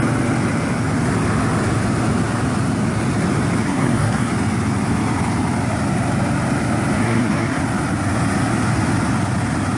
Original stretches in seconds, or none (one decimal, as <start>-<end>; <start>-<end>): 0.0-3.6; 4.3-7.0; 7.6-9.8